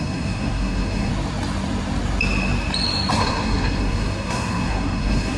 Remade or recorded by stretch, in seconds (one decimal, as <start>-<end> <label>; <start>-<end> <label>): 0.0-1.1 remade; 1.1-3.1 recorded; 3.1-5.4 remade